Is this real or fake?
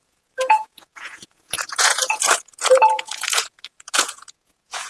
fake